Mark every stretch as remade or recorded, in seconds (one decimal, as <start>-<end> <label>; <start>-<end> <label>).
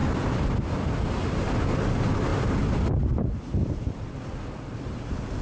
0.0-5.4 recorded